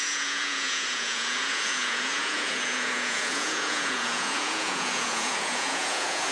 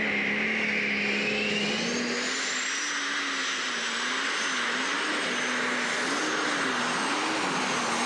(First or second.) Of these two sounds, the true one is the second